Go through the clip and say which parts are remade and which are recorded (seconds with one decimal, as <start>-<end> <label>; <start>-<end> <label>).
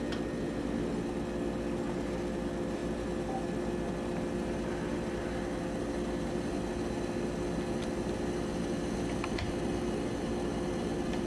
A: 0.0-11.3 recorded